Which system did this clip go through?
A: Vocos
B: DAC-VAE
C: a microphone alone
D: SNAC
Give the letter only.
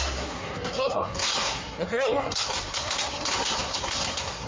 D